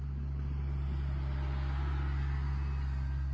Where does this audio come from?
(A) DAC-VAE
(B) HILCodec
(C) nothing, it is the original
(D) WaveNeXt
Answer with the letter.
C